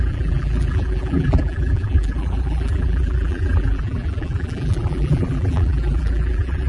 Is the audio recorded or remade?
remade